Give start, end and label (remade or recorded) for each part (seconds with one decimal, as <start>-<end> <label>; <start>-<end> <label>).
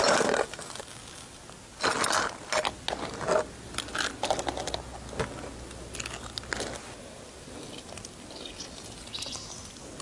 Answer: 0.0-10.0 recorded